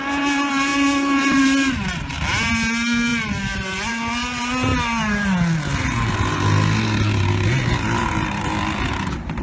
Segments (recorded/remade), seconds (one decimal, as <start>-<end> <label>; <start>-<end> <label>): 0.0-9.4 recorded